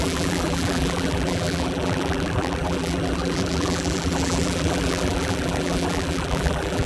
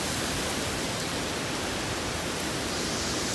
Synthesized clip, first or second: first